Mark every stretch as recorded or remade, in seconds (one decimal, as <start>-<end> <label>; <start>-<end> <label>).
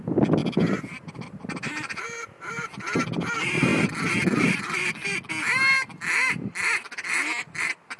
0.0-0.4 recorded; 0.4-2.7 remade; 2.7-8.0 recorded